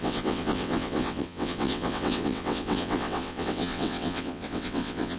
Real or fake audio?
fake